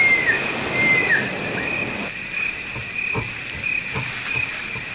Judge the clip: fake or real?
real